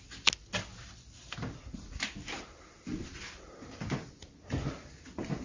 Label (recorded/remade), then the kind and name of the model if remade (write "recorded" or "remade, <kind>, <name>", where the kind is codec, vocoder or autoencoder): recorded